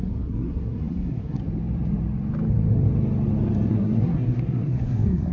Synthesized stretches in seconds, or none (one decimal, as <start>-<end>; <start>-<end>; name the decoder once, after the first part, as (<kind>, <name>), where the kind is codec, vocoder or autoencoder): 0.0-1.4 (codec, SNAC); 3.7-5.3